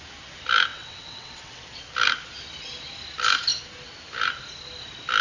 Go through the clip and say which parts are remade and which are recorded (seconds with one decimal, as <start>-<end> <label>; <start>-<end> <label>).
0.0-0.7 recorded; 0.7-1.8 remade; 1.8-5.2 recorded